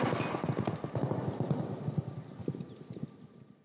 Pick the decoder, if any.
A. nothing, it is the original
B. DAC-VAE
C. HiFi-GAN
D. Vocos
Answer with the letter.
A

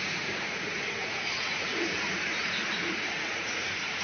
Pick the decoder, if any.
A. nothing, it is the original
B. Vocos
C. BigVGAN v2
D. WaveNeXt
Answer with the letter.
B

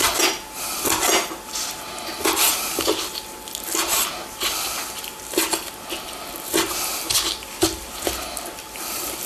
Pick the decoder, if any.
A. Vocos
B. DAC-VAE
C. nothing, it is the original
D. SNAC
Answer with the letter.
C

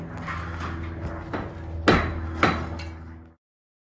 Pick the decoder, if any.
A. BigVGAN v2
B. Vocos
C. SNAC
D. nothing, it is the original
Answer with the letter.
D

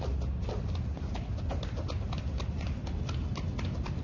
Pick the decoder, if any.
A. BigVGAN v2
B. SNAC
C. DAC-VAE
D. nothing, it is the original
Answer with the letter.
D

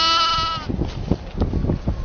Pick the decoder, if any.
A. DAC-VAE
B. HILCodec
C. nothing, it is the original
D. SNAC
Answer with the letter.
C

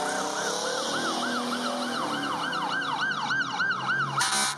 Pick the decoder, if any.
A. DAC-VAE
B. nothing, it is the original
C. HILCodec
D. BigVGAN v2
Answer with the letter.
B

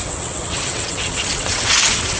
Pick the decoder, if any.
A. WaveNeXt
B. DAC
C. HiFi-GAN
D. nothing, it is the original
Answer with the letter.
A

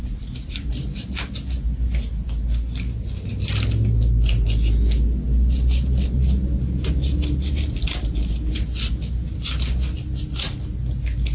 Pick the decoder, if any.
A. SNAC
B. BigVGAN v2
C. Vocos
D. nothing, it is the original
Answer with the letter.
D